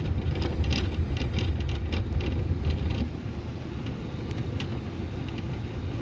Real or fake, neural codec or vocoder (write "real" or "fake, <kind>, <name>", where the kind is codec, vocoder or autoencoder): real